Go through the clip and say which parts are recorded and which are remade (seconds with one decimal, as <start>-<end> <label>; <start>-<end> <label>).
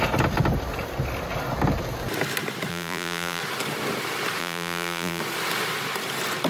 0.0-2.7 recorded; 2.7-3.4 remade; 3.4-4.4 recorded; 4.4-5.2 remade; 5.2-6.5 recorded